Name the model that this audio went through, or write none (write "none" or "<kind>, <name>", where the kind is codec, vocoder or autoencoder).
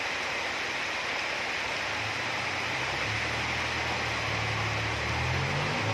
none